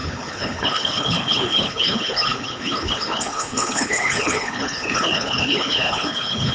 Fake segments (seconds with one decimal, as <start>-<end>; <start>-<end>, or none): 0.0-6.5